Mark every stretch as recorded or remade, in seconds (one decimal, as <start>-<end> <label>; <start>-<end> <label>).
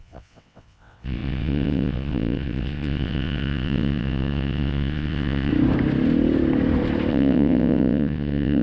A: 0.0-5.5 remade; 5.5-7.1 recorded; 7.1-8.6 remade